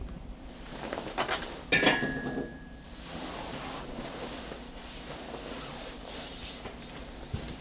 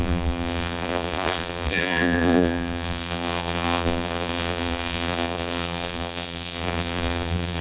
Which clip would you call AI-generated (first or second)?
second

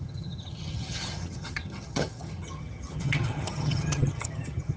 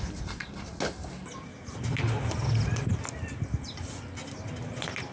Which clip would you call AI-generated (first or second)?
first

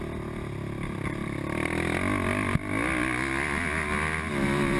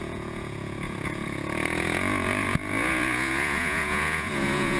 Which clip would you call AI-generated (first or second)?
second